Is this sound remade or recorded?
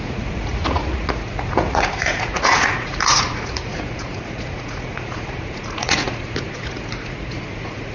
remade